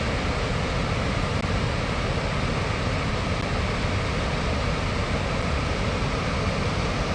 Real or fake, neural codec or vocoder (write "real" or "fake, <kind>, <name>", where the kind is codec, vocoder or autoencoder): real